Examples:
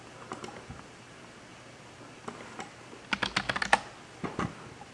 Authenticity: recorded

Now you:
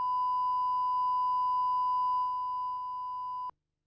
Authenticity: recorded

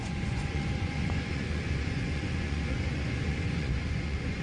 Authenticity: remade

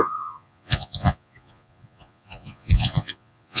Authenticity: remade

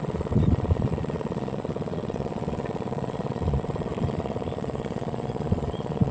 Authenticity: remade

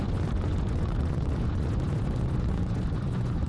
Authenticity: remade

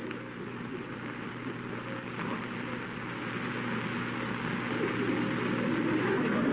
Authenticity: recorded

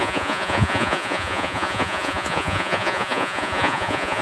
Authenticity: remade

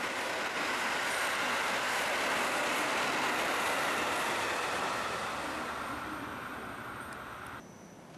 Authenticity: recorded